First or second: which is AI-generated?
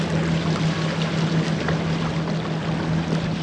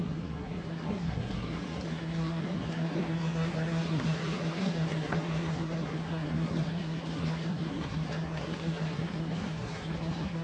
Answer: second